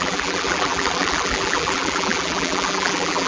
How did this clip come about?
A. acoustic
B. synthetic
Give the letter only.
B